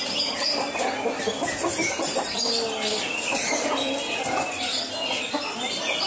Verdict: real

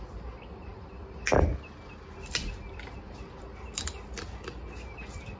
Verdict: real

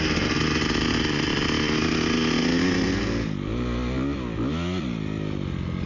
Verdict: real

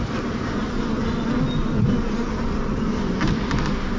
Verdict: real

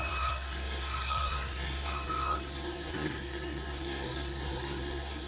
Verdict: fake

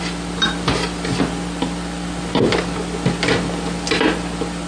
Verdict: real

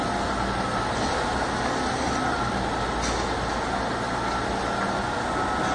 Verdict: real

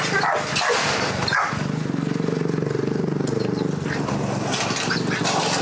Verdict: real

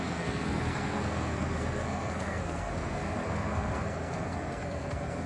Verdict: fake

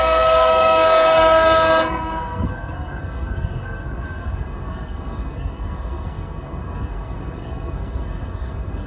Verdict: fake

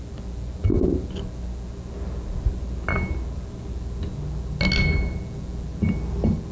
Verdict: real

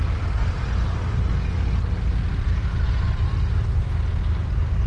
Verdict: real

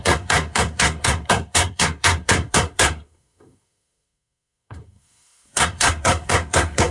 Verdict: fake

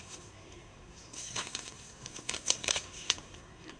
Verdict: fake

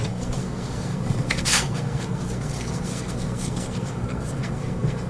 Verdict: fake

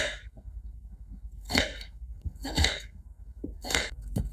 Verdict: fake